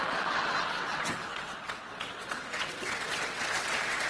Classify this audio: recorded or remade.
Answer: remade